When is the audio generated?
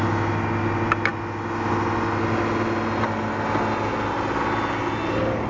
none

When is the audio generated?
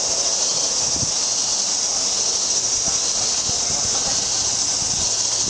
none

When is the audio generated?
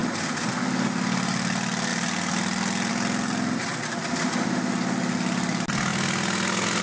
none